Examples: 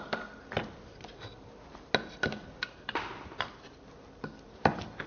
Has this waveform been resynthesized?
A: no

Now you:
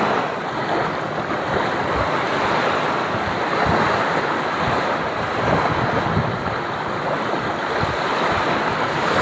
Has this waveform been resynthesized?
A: no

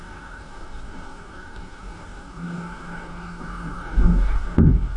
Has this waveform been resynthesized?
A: yes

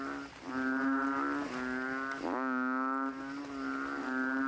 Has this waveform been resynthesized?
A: no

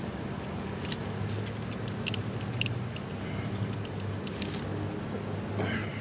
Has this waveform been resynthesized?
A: no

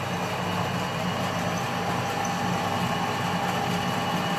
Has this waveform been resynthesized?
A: no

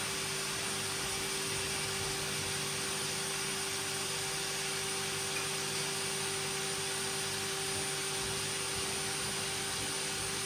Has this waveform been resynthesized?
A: no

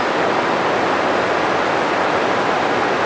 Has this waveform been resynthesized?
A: no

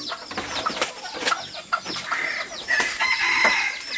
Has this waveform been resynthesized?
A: no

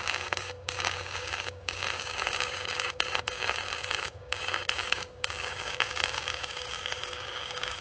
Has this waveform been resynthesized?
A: yes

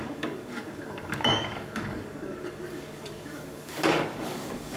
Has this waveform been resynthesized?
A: yes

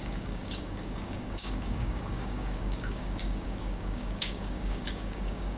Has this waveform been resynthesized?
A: yes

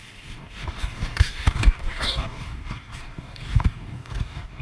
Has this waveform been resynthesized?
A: yes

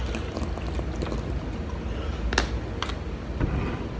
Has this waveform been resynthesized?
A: no